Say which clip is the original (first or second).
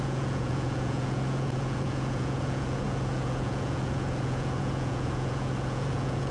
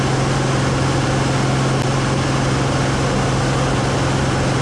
second